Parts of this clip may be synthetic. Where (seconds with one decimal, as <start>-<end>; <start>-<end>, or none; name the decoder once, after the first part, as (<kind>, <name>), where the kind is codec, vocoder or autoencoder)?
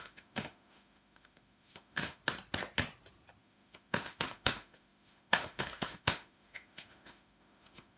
0.0-2.2 (autoencoder, DAC-VAE); 3.4-8.0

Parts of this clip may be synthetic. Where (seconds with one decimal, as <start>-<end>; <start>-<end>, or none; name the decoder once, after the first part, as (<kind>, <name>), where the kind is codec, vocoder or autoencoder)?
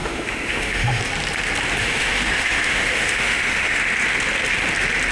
0.0-1.0 (autoencoder, DAC-VAE); 1.8-3.8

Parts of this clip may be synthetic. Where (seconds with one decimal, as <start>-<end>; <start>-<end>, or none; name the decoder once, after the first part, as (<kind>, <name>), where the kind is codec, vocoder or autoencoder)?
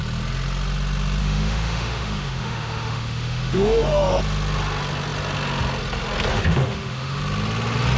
1.2-4.2 (autoencoder, DAC-VAE); 6.3-7.2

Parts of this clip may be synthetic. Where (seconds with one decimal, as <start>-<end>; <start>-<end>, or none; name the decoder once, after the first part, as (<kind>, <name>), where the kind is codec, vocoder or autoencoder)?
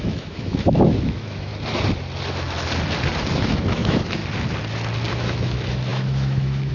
0.0-1.5 (autoencoder, DAC-VAE); 3.3-4.2; 5.1-6.7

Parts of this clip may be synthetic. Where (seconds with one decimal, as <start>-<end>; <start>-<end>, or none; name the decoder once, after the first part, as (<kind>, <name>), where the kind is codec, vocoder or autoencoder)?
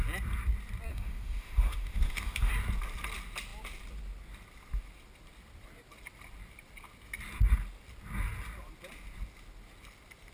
0.9-2.5 (autoencoder, DAC-VAE)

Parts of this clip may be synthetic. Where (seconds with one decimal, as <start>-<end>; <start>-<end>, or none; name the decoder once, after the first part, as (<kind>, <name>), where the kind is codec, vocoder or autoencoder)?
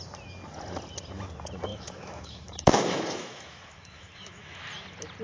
1.7-4.6 (autoencoder, DAC-VAE)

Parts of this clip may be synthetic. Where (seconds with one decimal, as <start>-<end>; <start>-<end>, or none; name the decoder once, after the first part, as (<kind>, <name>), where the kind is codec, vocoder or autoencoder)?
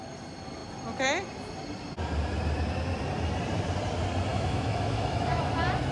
4.3-5.5 (autoencoder, DAC-VAE)